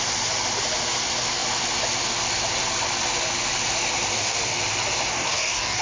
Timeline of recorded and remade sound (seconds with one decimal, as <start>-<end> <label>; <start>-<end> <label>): 0.0-4.1 recorded; 4.1-4.6 remade; 4.6-5.1 recorded; 5.1-5.8 remade

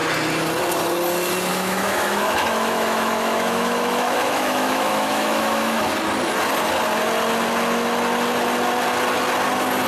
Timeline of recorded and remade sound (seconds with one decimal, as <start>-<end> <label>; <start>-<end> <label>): 0.0-1.5 recorded; 1.5-5.8 remade; 5.8-9.9 recorded

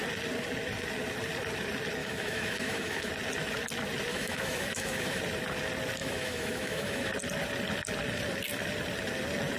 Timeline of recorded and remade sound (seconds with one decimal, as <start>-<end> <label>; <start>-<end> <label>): 0.0-2.0 recorded; 2.0-3.1 remade; 3.1-4.1 recorded; 4.1-5.2 remade; 5.2-6.0 recorded; 6.0-7.1 remade; 7.1-9.6 recorded